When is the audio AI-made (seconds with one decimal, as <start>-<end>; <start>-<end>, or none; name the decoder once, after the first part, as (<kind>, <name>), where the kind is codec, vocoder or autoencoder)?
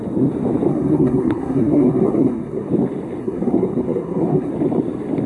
0.7-2.7 (codec, SNAC); 3.2-4.5